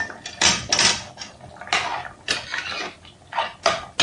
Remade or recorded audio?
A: recorded